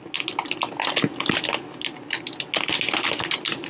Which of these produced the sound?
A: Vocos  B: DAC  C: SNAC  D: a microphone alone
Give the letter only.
D